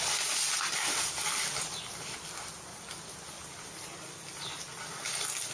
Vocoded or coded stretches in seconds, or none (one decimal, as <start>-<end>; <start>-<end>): none